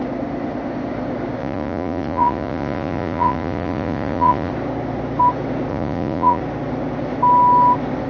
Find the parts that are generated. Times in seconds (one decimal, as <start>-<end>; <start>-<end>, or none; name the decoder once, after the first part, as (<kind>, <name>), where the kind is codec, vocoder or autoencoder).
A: 1.4-4.5 (vocoder, Vocos); 5.7-6.4